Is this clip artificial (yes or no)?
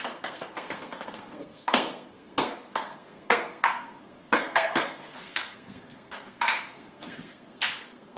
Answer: yes